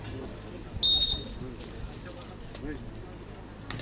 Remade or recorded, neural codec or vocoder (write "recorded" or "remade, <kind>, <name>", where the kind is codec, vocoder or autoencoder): recorded